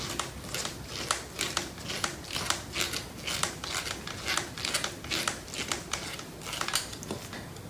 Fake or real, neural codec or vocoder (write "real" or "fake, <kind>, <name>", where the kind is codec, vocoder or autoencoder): real